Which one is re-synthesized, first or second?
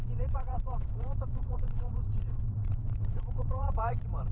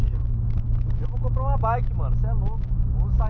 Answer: first